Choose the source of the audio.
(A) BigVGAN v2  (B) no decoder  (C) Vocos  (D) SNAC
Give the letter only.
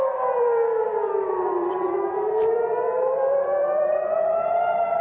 A